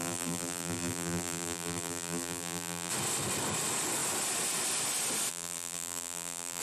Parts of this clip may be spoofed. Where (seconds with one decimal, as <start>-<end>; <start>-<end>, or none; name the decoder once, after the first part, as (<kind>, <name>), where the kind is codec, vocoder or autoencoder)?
0.0-2.9 (vocoder, BigVGAN v2); 5.3-6.6